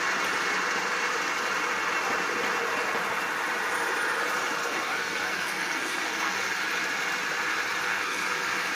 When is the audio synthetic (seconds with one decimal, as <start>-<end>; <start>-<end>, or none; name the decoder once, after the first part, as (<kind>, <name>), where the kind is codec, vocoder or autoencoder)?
4.6-6.6 (codec, SNAC); 7.9-8.7